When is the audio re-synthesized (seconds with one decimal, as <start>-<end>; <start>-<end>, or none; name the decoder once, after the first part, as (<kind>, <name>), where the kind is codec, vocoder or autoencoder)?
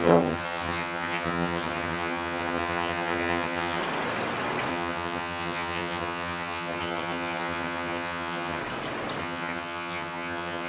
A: 0.0-3.8 (vocoder, HiFi-GAN); 4.7-8.6; 9.2-10.7